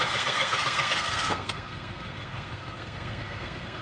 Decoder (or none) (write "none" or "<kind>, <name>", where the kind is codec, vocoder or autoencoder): codec, SNAC